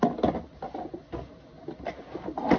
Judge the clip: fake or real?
real